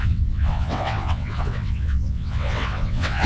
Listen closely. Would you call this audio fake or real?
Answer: fake